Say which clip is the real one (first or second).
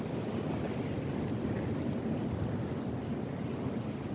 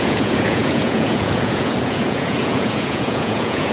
first